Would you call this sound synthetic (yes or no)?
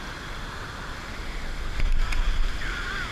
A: no